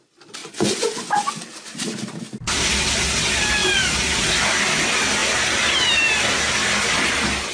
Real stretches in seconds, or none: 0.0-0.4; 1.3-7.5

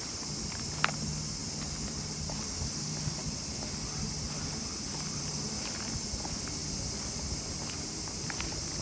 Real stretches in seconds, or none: 0.0-8.8

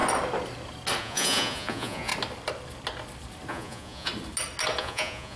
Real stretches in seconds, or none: 0.0-1.0; 2.1-3.5; 4.1-4.8

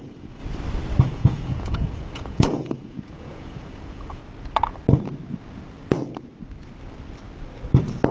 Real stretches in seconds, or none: 0.4-1.0; 4.2-8.1

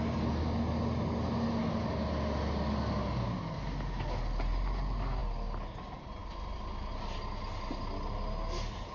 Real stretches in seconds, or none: 0.0-8.9

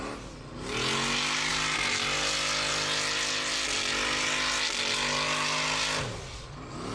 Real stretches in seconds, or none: 0.0-6.9

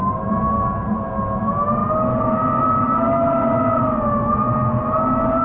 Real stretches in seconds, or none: 0.0-5.4

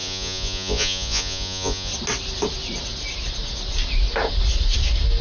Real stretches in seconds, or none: 1.9-5.2